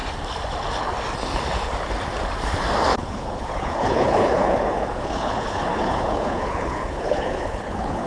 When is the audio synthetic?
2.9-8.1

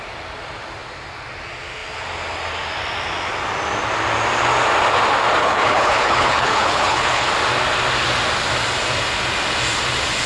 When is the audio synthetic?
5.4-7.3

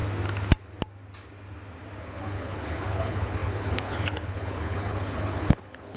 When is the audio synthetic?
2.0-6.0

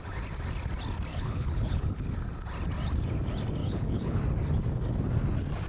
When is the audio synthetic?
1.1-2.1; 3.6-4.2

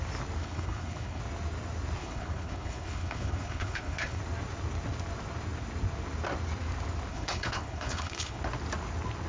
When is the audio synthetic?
0.4-1.2; 2.0-4.2; 7.1-8.4